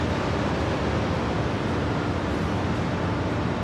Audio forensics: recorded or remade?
recorded